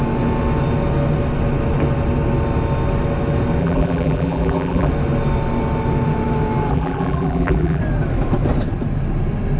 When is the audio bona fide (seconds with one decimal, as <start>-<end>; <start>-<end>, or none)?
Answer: 0.0-3.6; 4.9-6.7; 7.8-9.6